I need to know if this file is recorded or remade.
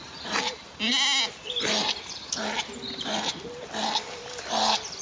recorded